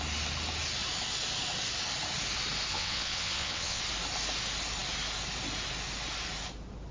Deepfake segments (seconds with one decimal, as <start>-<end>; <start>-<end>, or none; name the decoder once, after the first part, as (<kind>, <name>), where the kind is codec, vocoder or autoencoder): 2.7-3.8 (vocoder, WaveNeXt)